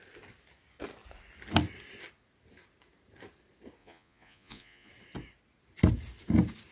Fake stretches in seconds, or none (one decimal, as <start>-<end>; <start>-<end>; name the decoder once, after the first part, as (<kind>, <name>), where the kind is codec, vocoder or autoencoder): 3.8-4.9 (vocoder, Vocos)

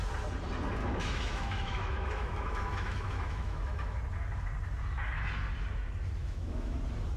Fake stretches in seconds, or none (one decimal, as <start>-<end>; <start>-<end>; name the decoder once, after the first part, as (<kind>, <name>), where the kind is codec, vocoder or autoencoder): 0.8-4.0 (autoencoder, DAC-VAE); 6.2-6.8

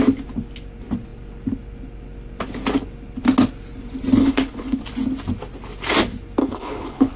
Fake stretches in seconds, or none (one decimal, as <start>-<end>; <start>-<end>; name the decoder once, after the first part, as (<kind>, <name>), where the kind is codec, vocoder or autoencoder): 4.2-4.8 (codec, HILCodec); 6.4-7.2